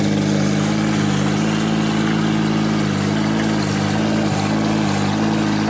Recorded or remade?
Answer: recorded